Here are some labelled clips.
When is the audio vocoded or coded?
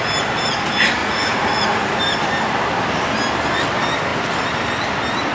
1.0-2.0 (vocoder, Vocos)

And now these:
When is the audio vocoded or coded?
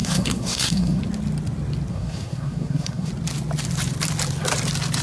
0.0-1.0 (codec, SNAC); 1.9-3.1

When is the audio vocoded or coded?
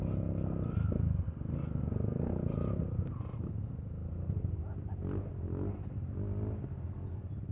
4.0-5.3 (vocoder, BigVGAN v2)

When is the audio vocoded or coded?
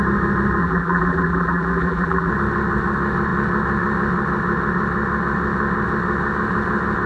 0.6-2.3 (vocoder, BigVGAN v2)